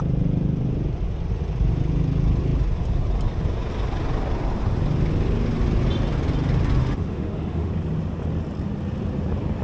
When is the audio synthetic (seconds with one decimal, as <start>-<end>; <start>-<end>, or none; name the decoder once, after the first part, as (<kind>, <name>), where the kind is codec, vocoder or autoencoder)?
6.8-7.7 (autoencoder, DAC-VAE)